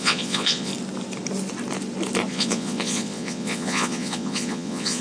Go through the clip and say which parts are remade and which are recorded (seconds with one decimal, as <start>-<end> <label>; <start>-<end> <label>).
0.0-0.7 remade; 0.7-2.3 recorded; 2.3-5.0 remade